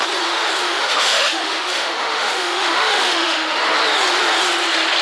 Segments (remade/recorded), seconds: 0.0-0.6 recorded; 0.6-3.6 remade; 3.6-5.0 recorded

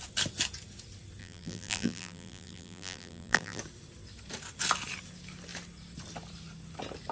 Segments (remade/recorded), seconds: 0.0-1.2 recorded; 1.2-3.6 remade; 3.6-7.1 recorded

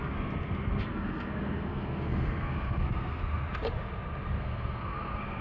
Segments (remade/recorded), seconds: 0.0-3.2 remade; 3.2-4.4 recorded; 4.4-5.4 remade